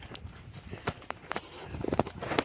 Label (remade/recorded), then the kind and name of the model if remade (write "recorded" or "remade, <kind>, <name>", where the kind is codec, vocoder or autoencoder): remade, vocoder, BigVGAN v2